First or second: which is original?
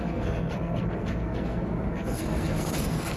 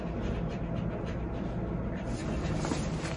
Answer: second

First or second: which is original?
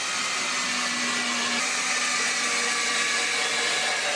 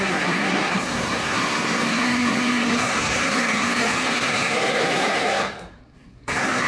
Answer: first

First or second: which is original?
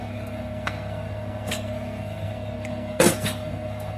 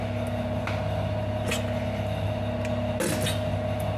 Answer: second